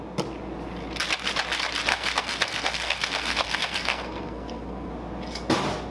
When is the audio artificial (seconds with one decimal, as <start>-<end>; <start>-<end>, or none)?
1.9-4.9